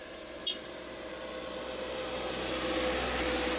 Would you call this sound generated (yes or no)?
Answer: no